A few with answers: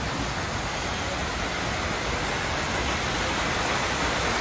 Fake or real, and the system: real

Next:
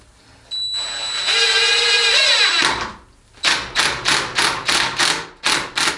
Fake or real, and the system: real